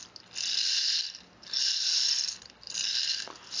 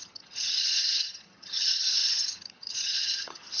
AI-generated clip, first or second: second